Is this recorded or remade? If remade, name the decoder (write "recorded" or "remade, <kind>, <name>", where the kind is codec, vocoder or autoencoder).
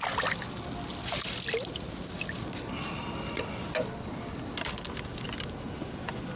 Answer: recorded